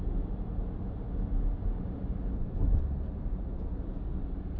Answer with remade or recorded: recorded